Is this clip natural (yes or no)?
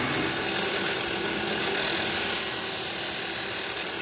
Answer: yes